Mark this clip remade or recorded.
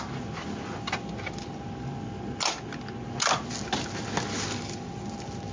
recorded